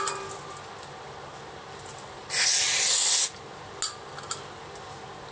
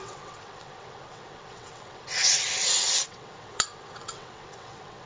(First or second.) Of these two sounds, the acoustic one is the first